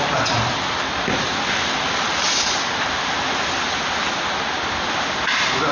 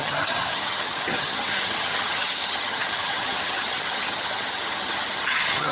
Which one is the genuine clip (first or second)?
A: first